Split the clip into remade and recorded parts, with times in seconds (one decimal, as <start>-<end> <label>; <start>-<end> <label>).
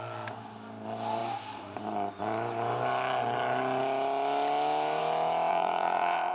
0.0-5.5 recorded; 5.5-6.3 remade